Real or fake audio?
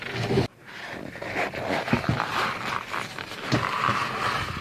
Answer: real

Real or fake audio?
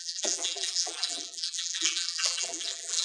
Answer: fake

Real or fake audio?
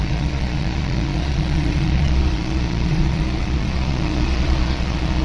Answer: fake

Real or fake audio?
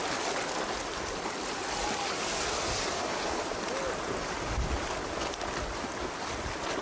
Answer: real